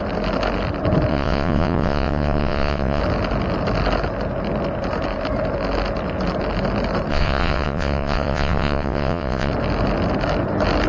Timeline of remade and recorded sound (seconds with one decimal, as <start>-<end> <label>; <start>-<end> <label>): 0.0-1.1 recorded; 1.1-3.0 remade; 3.0-7.1 recorded; 7.1-9.5 remade; 9.5-10.9 recorded